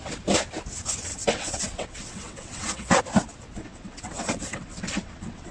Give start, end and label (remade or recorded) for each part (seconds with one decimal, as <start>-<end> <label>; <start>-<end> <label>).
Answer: 0.0-1.1 recorded; 1.1-3.0 remade; 3.0-3.6 recorded; 3.6-5.5 remade